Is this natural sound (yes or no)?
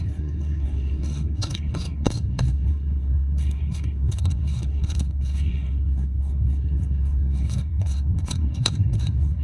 no